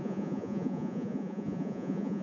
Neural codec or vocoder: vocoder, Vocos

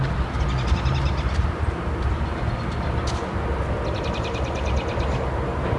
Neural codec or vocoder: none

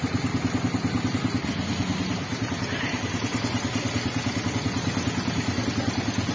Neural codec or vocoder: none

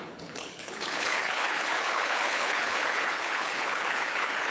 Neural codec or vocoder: codec, HILCodec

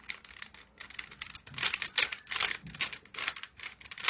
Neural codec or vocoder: none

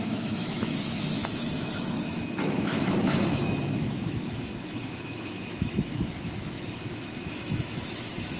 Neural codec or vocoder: autoencoder, DAC-VAE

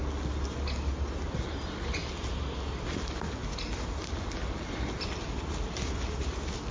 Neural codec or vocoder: none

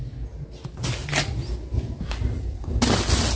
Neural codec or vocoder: none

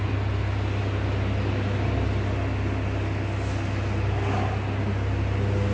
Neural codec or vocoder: none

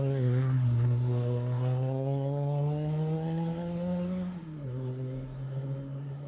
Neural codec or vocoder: codec, SNAC